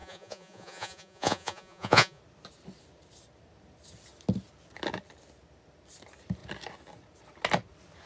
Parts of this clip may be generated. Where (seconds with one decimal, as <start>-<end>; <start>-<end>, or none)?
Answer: 0.0-2.2